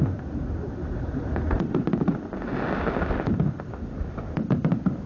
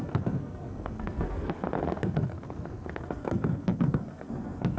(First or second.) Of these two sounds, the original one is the first